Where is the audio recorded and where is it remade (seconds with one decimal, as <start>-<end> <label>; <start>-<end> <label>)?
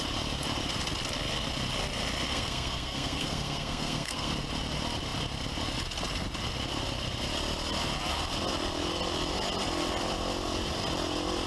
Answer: 0.0-2.3 recorded; 2.3-4.3 remade; 4.3-11.5 recorded